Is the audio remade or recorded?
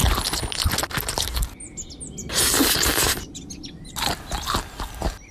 recorded